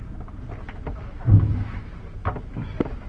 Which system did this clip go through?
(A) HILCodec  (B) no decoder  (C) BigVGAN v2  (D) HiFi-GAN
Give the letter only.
B